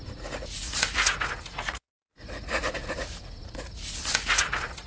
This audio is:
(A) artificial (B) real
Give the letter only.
A